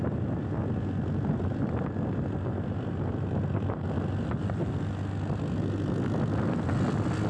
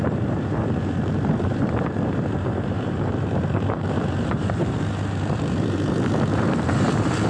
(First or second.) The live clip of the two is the first